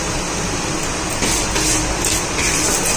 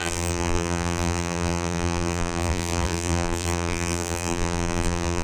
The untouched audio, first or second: first